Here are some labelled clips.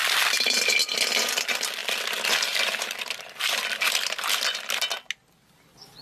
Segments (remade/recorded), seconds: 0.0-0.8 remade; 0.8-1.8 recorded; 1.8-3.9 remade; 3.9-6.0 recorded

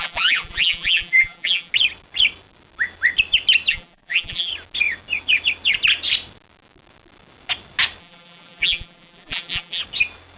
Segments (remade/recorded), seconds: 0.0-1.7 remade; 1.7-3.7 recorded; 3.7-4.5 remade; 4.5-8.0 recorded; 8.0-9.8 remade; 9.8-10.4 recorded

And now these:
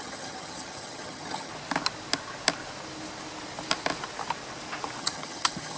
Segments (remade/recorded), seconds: 0.0-1.5 remade; 1.5-5.0 recorded; 5.0-5.8 remade

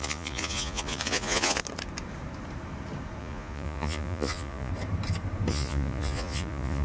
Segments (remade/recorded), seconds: 0.0-1.6 remade; 1.6-3.2 recorded; 3.2-4.7 remade; 4.7-5.5 recorded; 5.5-6.8 remade

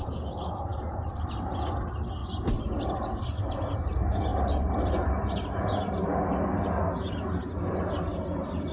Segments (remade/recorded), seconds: 0.0-0.7 recorded; 0.7-1.5 remade; 1.5-2.2 recorded; 2.2-3.4 remade; 3.4-8.7 recorded